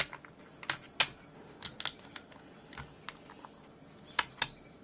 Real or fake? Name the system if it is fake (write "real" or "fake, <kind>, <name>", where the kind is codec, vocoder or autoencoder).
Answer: real